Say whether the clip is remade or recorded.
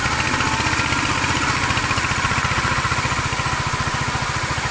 recorded